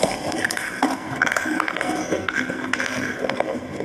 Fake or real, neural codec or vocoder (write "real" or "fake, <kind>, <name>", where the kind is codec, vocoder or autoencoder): fake, codec, SNAC